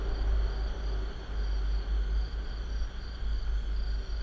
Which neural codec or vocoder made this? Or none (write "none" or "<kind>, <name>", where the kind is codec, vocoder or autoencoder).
none